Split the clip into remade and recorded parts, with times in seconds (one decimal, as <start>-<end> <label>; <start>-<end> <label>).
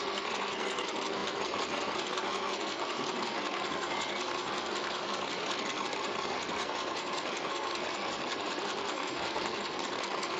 0.0-10.4 remade